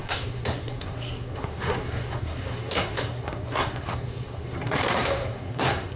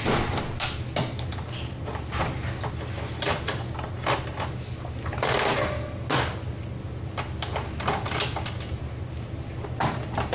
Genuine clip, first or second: second